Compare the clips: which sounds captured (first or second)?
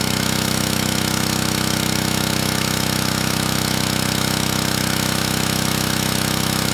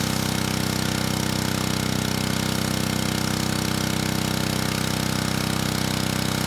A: second